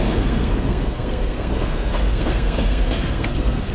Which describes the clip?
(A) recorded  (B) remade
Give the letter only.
B